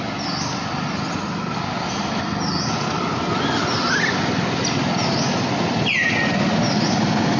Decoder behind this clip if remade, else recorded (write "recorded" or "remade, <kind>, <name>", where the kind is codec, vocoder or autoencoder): recorded